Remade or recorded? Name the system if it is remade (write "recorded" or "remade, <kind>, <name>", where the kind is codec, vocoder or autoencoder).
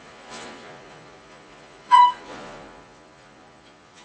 remade, vocoder, Vocos